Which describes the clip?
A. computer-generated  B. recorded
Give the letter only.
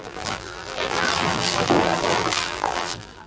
A